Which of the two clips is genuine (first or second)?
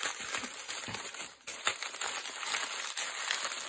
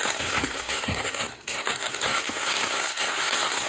first